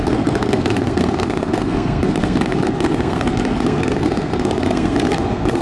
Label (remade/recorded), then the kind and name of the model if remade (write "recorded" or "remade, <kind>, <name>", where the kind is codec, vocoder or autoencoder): remade, codec, SNAC